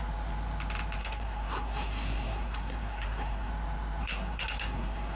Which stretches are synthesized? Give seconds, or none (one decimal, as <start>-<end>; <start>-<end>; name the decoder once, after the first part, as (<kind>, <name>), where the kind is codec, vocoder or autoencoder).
1.0-3.5 (codec, SNAC); 4.0-5.2